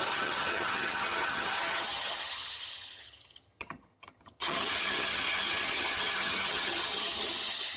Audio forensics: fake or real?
fake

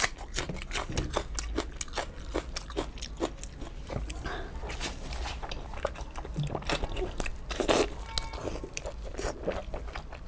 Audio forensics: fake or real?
real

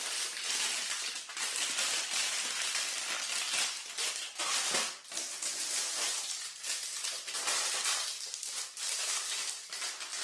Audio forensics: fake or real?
real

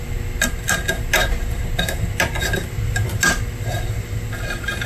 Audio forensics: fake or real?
real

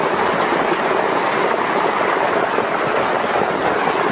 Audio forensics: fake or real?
real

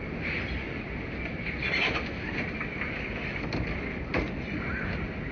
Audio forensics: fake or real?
real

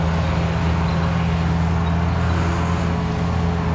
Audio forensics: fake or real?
real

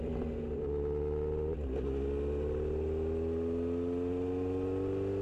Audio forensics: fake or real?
real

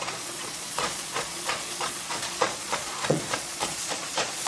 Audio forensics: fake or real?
fake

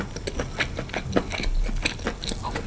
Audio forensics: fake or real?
real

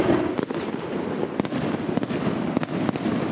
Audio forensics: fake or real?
real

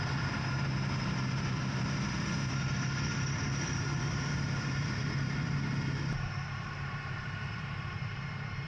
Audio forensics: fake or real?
fake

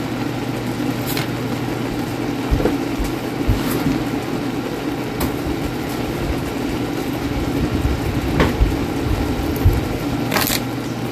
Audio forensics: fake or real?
real